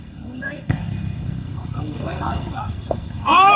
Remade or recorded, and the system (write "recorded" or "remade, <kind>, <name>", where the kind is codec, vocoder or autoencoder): remade, codec, SNAC